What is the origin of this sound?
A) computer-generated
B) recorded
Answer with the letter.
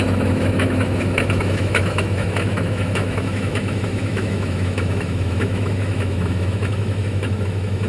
A